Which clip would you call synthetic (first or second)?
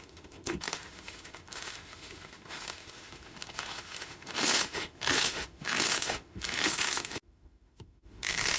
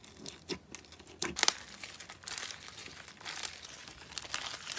first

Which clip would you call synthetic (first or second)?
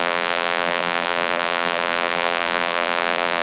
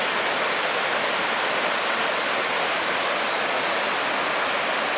first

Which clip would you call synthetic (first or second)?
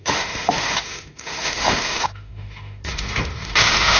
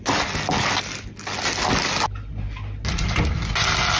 first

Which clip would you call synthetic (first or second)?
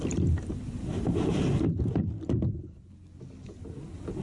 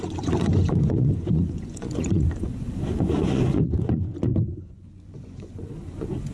second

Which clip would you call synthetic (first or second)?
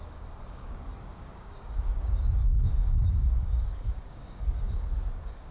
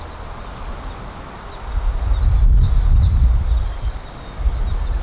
first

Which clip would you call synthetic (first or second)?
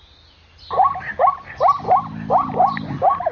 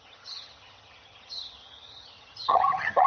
second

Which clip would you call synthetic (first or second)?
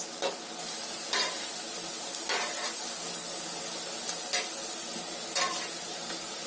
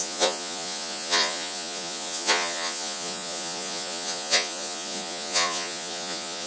second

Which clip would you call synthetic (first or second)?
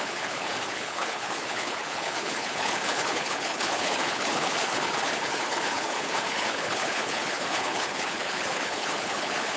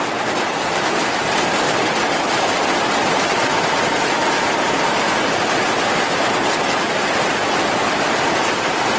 first